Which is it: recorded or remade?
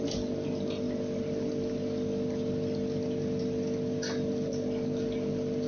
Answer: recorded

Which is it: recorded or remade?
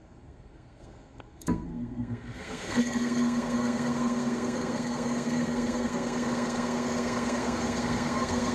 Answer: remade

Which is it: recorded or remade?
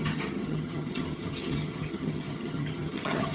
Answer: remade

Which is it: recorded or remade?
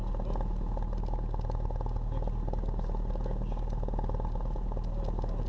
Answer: recorded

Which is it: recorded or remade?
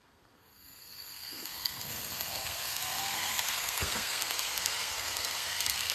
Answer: remade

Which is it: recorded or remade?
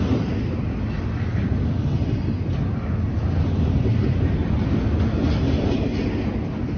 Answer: recorded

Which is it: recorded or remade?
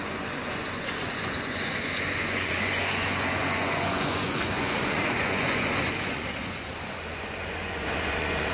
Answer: remade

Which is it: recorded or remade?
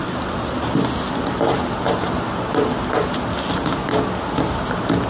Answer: recorded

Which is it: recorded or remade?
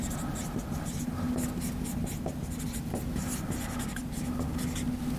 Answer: recorded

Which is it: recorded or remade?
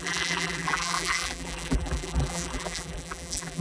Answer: remade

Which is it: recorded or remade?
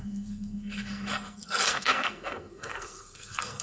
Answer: remade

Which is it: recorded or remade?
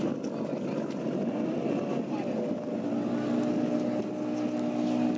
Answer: recorded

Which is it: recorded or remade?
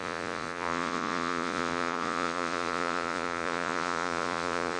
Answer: remade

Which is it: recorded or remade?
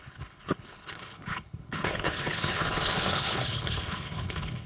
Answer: remade